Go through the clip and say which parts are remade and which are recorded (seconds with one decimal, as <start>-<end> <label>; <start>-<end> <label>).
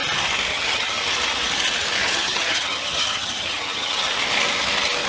0.0-0.5 recorded; 0.5-1.0 remade; 1.0-2.0 recorded; 2.0-4.1 remade; 4.1-5.1 recorded